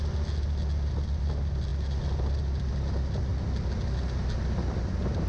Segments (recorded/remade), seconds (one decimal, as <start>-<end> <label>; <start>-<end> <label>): 0.0-5.3 recorded